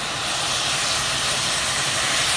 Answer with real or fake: real